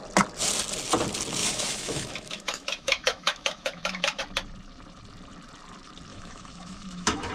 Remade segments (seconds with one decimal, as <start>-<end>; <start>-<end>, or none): 1.4-4.2; 6.1-7.3